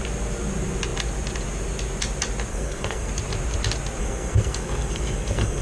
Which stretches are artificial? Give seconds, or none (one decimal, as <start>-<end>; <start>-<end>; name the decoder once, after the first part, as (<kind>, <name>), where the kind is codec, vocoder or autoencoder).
2.5-3.1 (codec, SNAC); 4.0-5.6